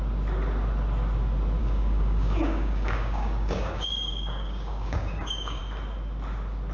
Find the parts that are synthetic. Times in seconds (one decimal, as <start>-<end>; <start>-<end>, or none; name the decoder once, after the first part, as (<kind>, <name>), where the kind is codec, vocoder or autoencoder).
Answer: 1.6-5.6 (codec, DAC)